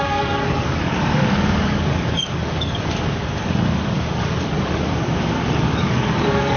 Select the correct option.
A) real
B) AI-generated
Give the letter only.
B